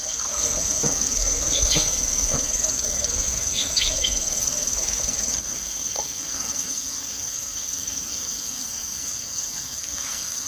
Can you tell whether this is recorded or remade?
remade